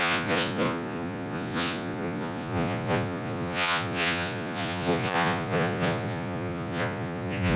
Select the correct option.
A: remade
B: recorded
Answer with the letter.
A